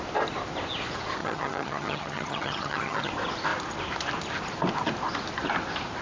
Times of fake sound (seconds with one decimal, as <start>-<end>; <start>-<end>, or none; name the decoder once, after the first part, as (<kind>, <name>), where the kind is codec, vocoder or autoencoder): 1.2-3.1 (vocoder, HiFi-GAN)